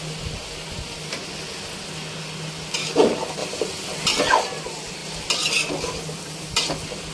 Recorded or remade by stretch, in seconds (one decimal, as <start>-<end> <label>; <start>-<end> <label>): 0.0-7.1 recorded